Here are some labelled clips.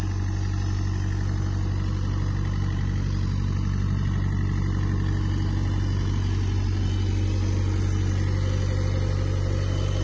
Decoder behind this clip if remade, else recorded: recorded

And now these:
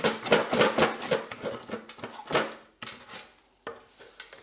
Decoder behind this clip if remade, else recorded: recorded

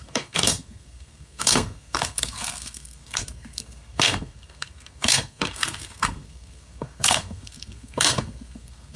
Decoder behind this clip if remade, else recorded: remade, codec, SNAC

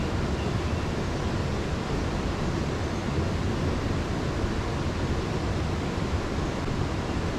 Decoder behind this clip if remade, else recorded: recorded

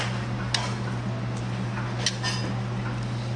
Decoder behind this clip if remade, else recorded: recorded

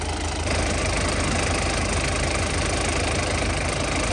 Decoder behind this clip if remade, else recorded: recorded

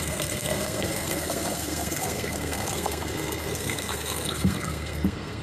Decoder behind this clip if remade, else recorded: remade, codec, SNAC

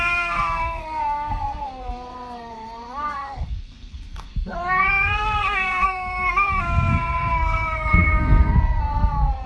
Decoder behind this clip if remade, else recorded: remade, codec, SNAC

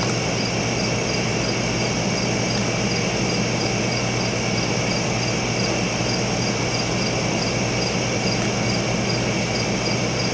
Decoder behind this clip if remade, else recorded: recorded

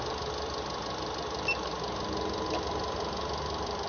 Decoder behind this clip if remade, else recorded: recorded